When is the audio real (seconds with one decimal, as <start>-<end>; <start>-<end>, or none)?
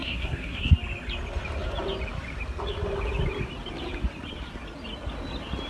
0.7-5.7